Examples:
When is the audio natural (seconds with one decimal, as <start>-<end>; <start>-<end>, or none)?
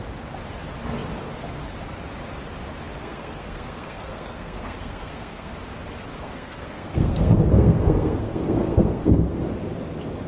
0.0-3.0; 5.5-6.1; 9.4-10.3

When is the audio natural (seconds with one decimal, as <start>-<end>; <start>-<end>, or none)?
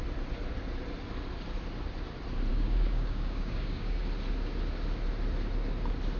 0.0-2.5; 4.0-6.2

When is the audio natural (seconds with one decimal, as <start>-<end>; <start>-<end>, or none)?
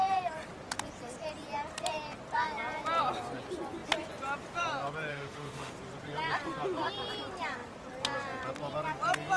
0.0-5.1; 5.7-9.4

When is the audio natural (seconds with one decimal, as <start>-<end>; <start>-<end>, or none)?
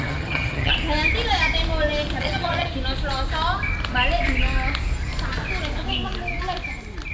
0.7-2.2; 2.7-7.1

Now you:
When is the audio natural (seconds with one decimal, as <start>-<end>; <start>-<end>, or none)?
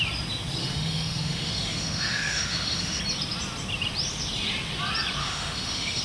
0.0-0.6; 3.0-5.2